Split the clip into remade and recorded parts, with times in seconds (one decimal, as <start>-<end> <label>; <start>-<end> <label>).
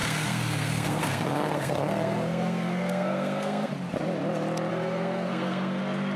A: 0.0-3.7 remade; 3.7-4.7 recorded; 4.7-5.8 remade; 5.8-6.2 recorded